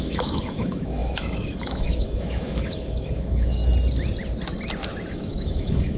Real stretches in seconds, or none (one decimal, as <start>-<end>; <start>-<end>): 3.6-5.1